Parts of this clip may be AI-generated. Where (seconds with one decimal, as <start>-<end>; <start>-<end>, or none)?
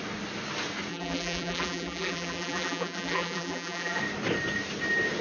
0.9-4.0